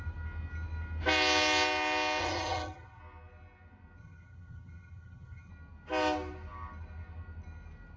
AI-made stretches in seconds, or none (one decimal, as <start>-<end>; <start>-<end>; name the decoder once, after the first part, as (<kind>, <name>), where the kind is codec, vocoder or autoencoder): 2.2-3.0 (vocoder, HiFi-GAN); 4.0-5.5